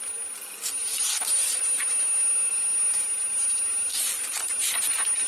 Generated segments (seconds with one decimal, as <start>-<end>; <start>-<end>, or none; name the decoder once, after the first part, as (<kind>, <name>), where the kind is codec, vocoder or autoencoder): none